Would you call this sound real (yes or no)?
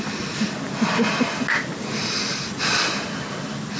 yes